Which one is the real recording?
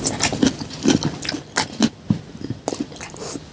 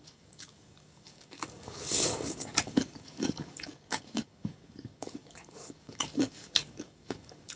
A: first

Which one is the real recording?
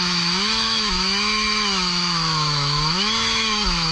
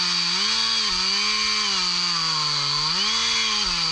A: second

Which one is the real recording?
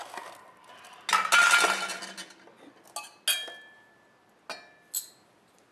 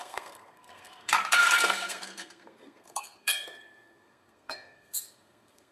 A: first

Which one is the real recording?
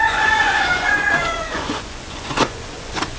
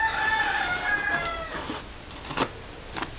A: second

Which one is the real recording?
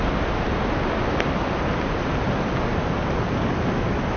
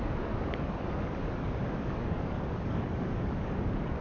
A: first